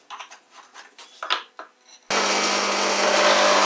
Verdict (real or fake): real